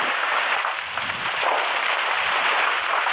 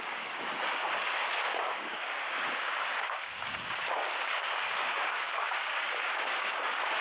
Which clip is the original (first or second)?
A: first